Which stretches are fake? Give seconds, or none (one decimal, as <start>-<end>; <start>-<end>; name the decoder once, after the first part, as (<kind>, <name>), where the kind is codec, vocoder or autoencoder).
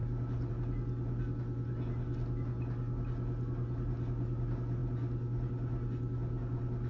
none